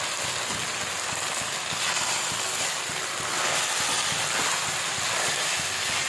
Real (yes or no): yes